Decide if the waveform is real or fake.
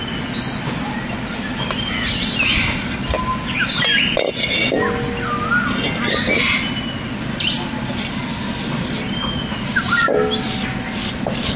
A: real